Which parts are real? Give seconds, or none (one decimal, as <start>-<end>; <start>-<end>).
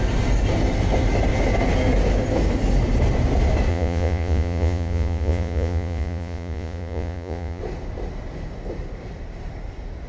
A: 0.0-3.7; 7.6-10.1